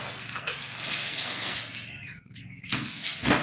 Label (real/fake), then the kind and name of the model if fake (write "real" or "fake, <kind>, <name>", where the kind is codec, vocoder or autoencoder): fake, codec, SNAC